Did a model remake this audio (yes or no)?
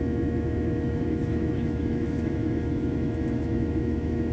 yes